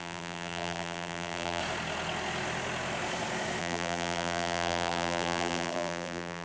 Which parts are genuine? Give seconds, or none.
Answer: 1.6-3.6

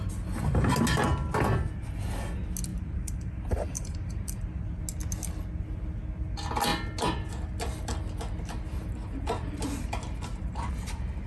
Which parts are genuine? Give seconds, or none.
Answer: 0.0-2.7; 4.8-11.3

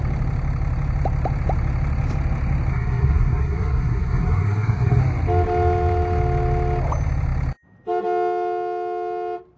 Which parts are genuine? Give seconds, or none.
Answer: 0.0-2.7; 5.0-9.6

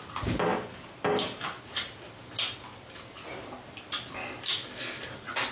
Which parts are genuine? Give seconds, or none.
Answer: 0.0-5.5

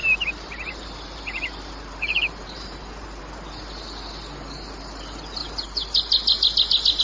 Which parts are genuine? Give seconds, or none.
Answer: 3.2-7.0

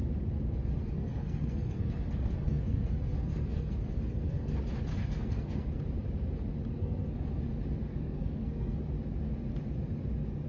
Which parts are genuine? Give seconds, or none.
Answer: 0.0-0.8; 4.5-4.9; 5.8-6.7; 7.4-7.9; 8.8-10.5

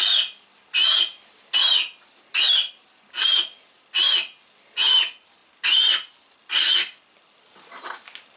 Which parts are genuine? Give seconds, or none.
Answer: 0.0-8.4

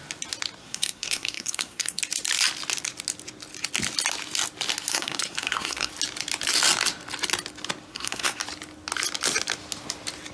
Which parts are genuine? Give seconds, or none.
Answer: 0.0-0.6; 2.0-4.9; 5.9-7.9; 8.4-10.3